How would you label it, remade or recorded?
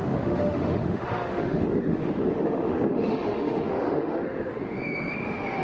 remade